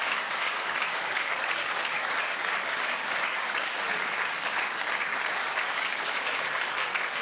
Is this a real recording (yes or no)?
no